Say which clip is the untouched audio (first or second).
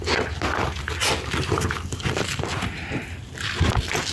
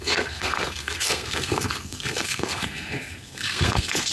first